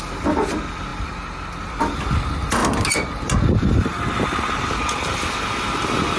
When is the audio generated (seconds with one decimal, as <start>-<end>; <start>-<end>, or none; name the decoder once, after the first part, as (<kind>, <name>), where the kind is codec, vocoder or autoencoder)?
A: none